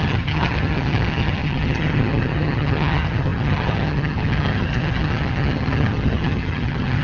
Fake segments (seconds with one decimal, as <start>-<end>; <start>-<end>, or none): 0.0-7.0